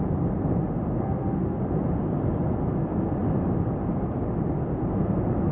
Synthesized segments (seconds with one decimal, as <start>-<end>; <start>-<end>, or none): 0.9-1.6